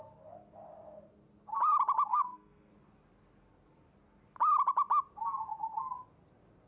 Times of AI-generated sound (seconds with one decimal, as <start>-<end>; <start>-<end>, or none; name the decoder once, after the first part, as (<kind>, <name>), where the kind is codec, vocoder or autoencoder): 2.1-2.7 (codec, SNAC)